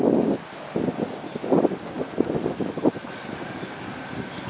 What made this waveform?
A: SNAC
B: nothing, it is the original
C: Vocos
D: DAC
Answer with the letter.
B